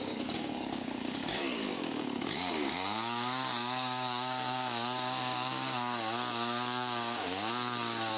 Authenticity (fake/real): fake